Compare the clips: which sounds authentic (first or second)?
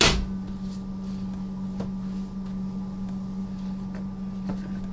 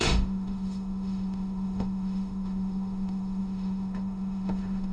first